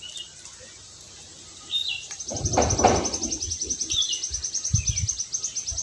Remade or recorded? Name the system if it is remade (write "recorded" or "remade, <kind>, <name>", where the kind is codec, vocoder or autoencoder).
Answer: recorded